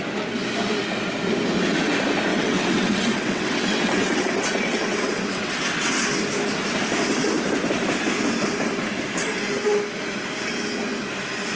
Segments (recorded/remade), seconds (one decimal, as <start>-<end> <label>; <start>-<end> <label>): 0.0-2.3 recorded; 2.3-5.9 remade; 5.9-11.6 recorded